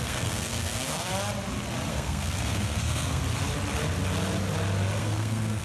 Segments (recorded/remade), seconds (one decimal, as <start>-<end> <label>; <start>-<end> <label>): 0.0-1.1 remade; 1.1-1.9 recorded; 1.9-3.2 remade; 3.2-5.0 recorded; 5.0-5.6 remade